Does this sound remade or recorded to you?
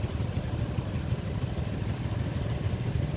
recorded